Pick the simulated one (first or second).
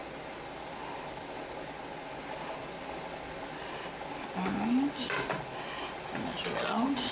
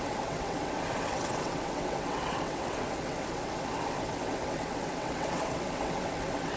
second